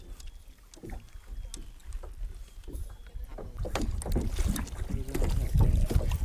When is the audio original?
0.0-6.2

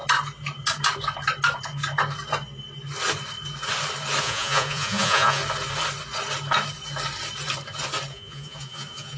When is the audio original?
0.0-4.2; 5.4-8.1

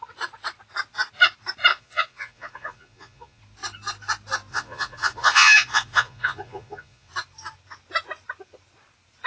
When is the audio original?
0.0-1.7; 3.4-4.5; 7.1-9.3

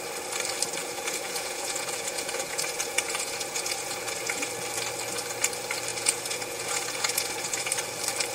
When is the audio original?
0.0-0.8; 4.5-5.9; 7.7-8.3